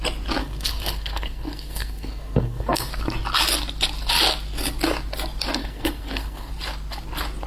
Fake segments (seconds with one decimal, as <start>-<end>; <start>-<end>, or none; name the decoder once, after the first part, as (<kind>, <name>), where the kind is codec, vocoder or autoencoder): 0.4-2.9 (codec, SNAC); 5.6-6.5

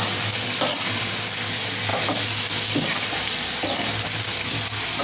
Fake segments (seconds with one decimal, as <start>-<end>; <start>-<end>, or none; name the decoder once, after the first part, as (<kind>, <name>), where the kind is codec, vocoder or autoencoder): none

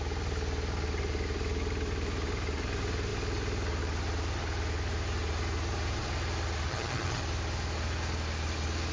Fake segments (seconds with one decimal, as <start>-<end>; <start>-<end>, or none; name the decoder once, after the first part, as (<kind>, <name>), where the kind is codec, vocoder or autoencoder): 6.7-7.2 (vocoder, HiFi-GAN)

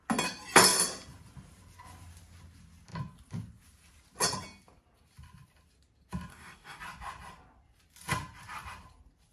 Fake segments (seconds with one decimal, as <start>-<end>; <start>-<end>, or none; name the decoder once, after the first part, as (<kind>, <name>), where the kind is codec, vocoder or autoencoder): 6.3-6.8 (codec, DAC)

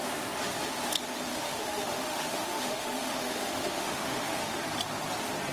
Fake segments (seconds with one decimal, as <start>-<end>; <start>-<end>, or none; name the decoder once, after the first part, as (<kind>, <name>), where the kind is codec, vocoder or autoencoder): 1.3-4.6 (autoencoder, DAC-VAE)

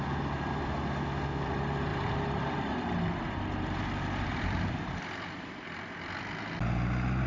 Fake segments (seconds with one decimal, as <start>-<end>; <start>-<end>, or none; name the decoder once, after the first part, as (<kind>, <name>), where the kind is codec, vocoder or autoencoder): 1.9-6.3 (vocoder, BigVGAN v2)

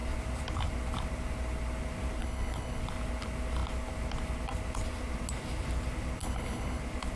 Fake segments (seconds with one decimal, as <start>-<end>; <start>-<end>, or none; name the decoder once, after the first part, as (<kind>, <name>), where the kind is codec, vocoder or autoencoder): 2.2-2.8 (codec, HILCodec); 6.2-6.8

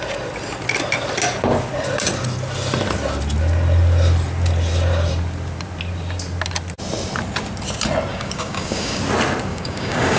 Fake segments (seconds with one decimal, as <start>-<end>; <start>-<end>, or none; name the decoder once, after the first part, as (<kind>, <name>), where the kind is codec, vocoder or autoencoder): 8.1-9.0 (codec, DAC); 9.5-10.2